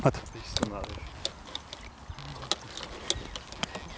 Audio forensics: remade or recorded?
recorded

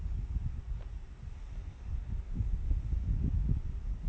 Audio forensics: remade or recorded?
recorded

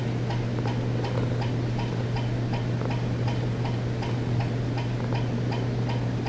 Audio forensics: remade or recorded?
recorded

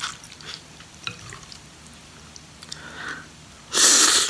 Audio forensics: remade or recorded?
remade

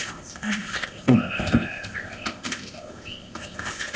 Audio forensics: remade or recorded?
remade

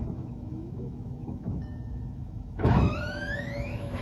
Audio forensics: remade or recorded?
remade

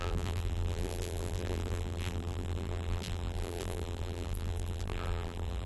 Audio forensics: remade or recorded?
remade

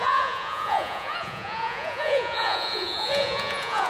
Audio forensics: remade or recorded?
remade